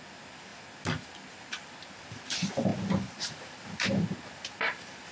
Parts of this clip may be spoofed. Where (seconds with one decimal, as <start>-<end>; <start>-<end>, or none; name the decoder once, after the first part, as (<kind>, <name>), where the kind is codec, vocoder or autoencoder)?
none